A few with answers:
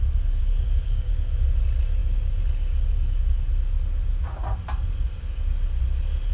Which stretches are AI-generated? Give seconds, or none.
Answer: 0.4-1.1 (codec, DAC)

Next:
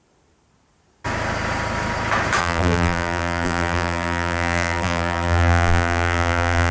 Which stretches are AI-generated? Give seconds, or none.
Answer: 2.4-6.7 (vocoder, BigVGAN v2)